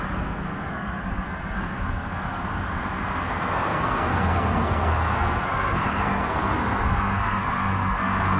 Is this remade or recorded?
remade